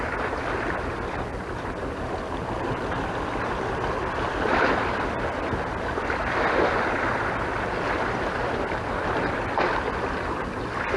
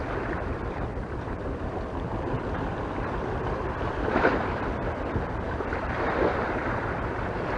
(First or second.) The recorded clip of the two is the first